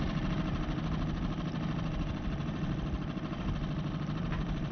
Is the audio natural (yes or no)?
yes